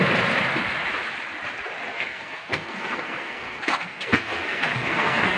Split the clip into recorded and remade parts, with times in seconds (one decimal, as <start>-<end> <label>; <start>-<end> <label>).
0.0-1.9 recorded; 1.9-5.4 remade